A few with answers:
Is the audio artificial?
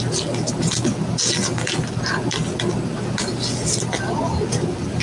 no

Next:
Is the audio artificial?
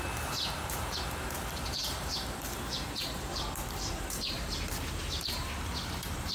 yes